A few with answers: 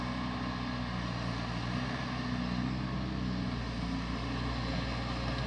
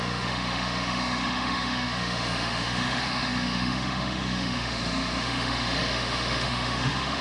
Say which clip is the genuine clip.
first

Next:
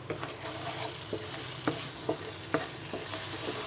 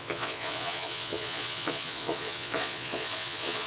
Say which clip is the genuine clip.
first